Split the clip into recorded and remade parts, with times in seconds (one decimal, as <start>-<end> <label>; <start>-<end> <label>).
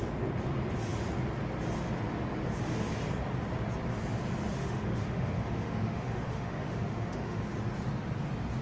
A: 0.0-4.5 recorded; 4.5-7.4 remade; 7.4-8.6 recorded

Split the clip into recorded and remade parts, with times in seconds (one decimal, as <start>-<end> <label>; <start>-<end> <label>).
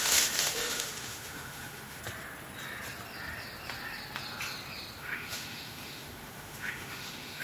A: 0.0-2.0 remade; 2.0-5.0 recorded; 5.0-7.4 remade